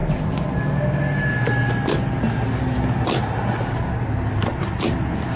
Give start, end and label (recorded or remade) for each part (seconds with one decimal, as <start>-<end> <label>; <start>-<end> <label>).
0.0-5.4 recorded